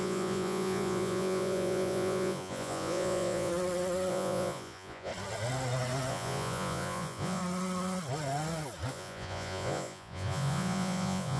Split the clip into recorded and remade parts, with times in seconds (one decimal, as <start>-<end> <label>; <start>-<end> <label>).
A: 0.0-3.5 remade; 3.5-4.1 recorded; 4.1-5.1 remade; 5.1-6.1 recorded; 6.1-7.4 remade; 7.4-8.9 recorded; 8.9-11.4 remade